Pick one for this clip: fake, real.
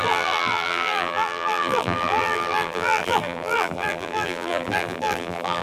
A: fake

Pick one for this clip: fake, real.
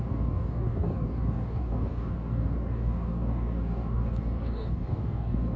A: fake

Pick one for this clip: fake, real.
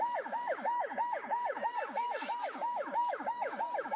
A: fake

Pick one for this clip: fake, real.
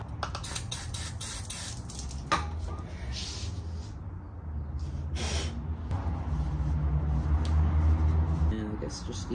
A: real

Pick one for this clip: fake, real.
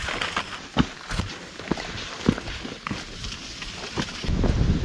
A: real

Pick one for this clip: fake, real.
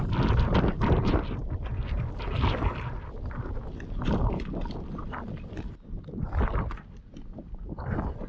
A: real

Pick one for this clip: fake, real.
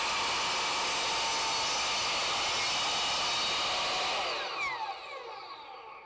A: real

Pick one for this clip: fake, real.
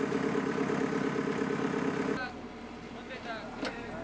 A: real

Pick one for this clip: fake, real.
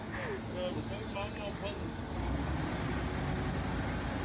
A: real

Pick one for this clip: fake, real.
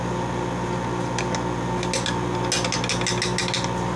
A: real